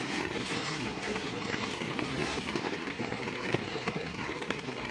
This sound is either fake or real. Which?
fake